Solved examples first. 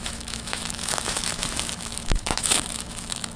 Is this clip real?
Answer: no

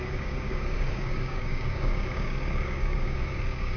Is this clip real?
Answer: no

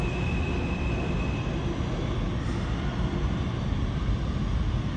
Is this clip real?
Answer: yes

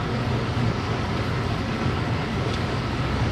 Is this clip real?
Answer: no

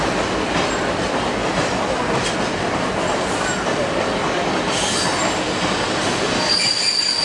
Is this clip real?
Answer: yes